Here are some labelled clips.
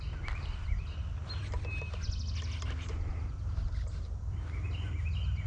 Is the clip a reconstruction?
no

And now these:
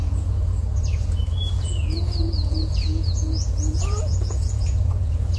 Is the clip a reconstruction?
yes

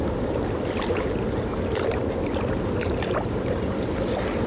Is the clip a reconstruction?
no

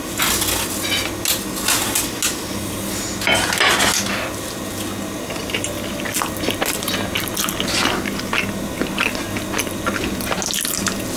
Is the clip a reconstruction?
no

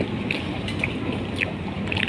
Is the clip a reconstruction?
no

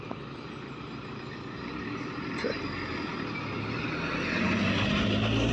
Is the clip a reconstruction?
no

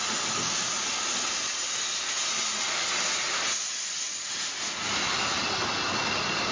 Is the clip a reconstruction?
no